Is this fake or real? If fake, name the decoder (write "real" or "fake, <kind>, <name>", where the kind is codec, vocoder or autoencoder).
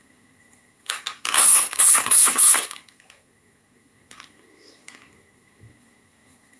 fake, codec, SNAC